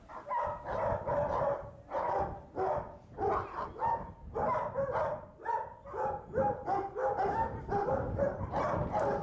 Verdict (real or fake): real